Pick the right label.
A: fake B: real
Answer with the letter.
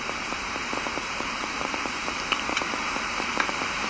A